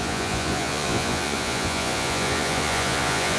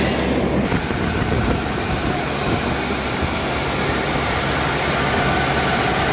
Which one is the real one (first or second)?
second